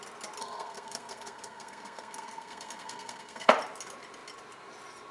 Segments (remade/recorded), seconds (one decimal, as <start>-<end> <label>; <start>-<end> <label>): 0.0-0.4 recorded; 0.4-3.5 remade; 3.5-5.1 recorded